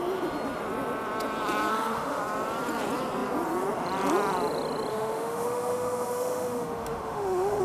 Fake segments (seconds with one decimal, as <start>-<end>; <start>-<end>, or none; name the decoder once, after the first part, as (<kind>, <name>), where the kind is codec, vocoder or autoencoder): 1.7-2.2 (autoencoder, DAC-VAE); 4.9-7.6